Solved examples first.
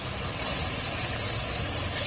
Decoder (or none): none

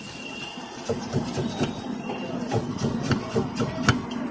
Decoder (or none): none